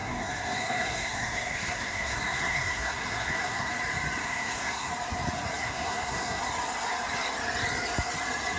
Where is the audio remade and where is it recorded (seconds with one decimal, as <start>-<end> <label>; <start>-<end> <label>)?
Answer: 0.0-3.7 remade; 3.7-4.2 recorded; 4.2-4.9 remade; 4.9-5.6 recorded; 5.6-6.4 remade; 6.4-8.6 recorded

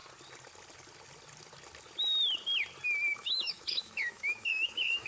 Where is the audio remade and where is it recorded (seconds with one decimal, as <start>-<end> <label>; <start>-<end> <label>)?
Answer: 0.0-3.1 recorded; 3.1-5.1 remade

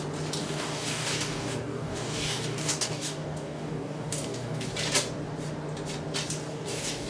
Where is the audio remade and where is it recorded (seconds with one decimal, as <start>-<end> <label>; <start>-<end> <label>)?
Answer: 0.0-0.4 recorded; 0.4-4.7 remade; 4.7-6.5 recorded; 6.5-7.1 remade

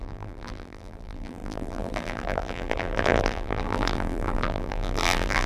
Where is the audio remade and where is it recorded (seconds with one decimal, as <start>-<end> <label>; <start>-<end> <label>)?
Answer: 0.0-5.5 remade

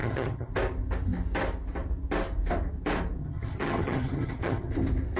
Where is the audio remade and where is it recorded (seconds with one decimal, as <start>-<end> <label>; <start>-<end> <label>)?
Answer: 0.0-0.5 remade; 0.5-3.2 recorded; 3.2-4.7 remade; 4.7-5.2 recorded